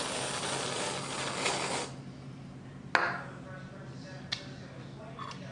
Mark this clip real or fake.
real